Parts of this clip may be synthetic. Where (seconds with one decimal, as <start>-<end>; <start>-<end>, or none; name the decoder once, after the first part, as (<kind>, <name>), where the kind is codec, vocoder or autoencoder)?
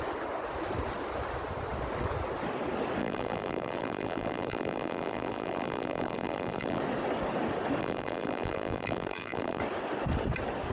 3.0-6.8 (vocoder, BigVGAN v2); 7.8-9.6